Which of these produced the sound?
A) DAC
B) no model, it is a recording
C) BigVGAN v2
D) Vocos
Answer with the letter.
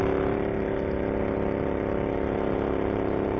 B